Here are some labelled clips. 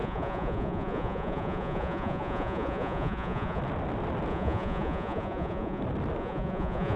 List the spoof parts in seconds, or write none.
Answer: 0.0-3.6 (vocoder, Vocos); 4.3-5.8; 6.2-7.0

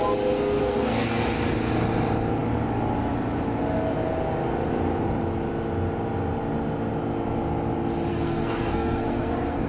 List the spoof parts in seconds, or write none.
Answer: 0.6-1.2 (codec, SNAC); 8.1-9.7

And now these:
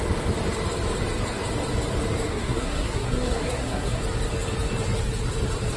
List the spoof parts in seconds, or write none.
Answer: 2.3-4.0 (codec, SNAC)

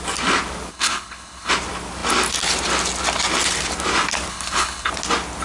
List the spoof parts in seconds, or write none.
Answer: 0.7-1.5 (codec, HILCodec); 4.3-4.9

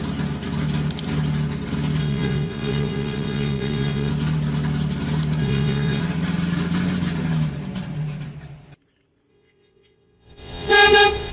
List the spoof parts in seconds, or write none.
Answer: 2.0-4.1 (vocoder, WaveNeXt); 5.4-6.0; 9.3-11.3

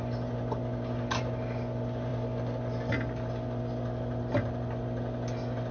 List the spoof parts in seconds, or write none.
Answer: none